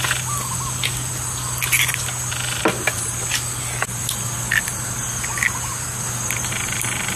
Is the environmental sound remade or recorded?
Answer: recorded